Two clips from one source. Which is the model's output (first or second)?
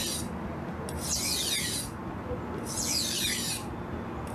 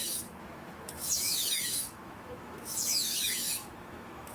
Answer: second